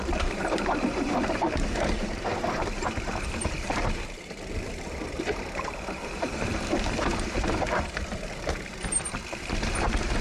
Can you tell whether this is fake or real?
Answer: fake